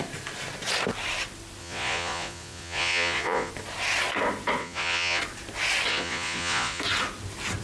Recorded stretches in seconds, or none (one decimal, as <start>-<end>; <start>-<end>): 0.0-1.6; 3.5-4.6; 5.2-5.9; 6.8-7.6